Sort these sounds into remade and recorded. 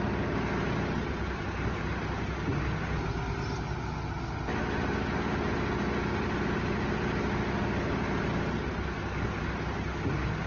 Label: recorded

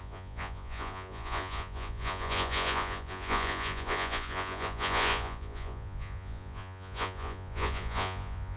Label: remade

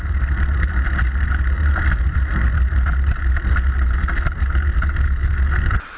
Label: recorded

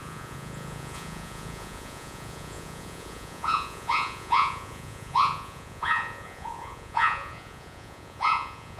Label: remade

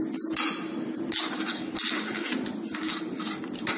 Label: recorded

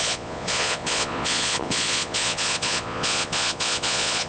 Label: remade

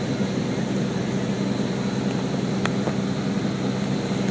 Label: recorded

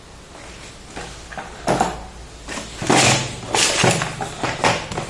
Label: recorded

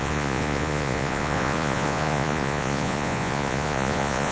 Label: remade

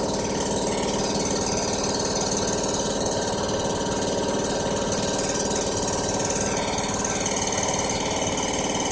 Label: recorded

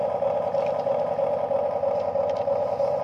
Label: recorded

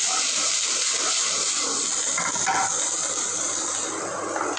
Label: recorded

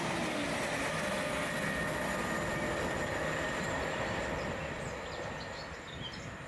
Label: recorded